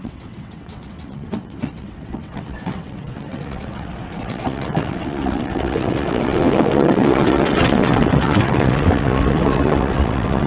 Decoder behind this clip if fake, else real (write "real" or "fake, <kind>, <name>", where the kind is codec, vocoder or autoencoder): fake, vocoder, WaveNeXt